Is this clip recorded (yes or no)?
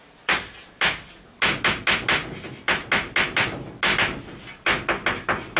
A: yes